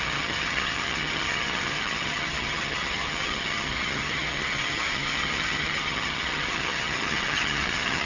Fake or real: fake